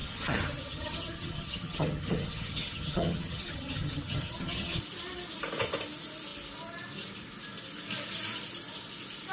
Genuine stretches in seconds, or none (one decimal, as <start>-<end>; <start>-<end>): 4.8-9.3